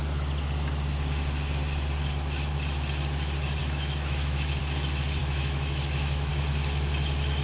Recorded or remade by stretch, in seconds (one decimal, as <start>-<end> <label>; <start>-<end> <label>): 0.0-3.6 recorded; 3.6-4.6 remade; 4.6-5.2 recorded; 5.2-6.3 remade; 6.3-7.4 recorded